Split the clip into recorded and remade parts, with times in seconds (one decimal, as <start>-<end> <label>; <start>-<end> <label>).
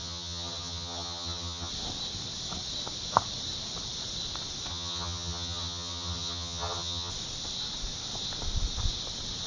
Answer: 0.0-1.7 remade; 1.7-4.7 recorded; 4.7-7.1 remade; 7.1-9.5 recorded